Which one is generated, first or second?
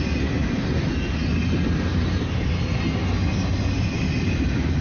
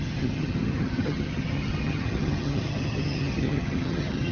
second